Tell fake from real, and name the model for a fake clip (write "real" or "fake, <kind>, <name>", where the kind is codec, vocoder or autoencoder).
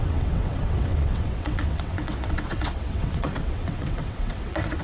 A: fake, vocoder, WaveNeXt